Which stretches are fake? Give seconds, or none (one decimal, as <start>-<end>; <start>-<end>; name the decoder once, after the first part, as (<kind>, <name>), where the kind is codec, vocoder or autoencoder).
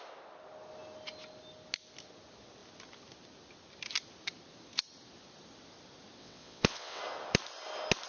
6.2-7.0 (vocoder, WaveNeXt)